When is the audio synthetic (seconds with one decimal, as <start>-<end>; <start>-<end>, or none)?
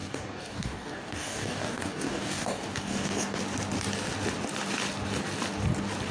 0.0-3.4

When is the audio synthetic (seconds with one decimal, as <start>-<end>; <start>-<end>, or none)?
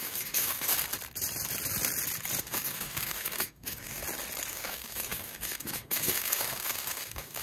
0.0-0.7; 2.4-4.0; 4.5-7.4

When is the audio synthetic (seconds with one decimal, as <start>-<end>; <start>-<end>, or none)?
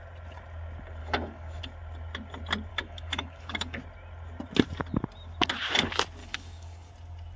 1.0-1.6; 2.7-3.8; 6.2-6.9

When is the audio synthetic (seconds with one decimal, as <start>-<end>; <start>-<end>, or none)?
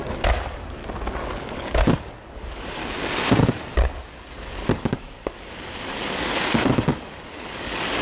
0.0-0.8; 1.4-2.8; 4.7-8.0